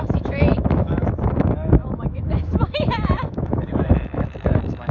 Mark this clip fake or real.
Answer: fake